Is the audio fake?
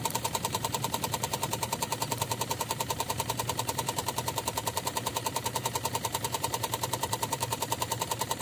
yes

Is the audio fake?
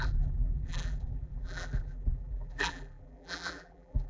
yes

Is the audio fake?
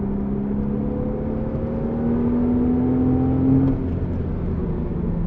no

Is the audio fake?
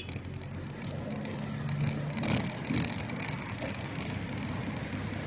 no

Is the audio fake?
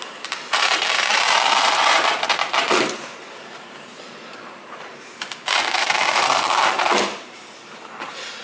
yes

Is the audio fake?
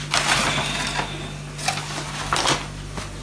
no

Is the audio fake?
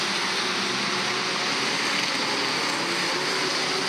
no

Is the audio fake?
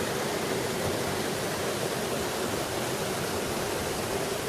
no